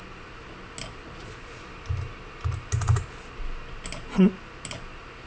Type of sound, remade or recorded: recorded